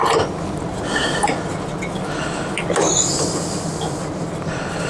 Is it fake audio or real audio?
real